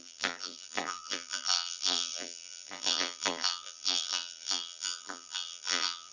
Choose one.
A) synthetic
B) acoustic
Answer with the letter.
A